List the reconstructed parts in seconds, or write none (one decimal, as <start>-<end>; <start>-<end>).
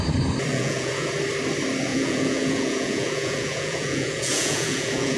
0.5-1.1; 1.9-5.2